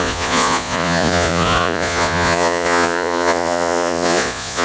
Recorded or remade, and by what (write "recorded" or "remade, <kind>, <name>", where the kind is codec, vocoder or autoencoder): remade, vocoder, Vocos